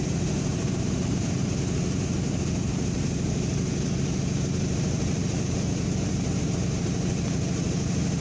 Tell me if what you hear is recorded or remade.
remade